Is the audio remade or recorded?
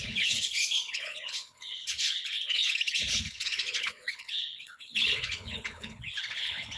remade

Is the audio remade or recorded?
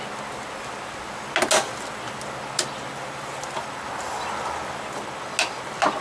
recorded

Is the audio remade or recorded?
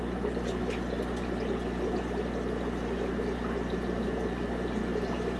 recorded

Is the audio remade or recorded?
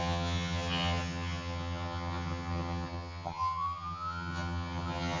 remade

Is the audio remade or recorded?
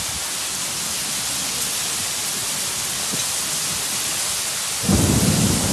recorded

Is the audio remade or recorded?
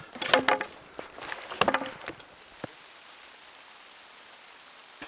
recorded